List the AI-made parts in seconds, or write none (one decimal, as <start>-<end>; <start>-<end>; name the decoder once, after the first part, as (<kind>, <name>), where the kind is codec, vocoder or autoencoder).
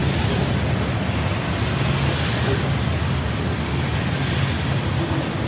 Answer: none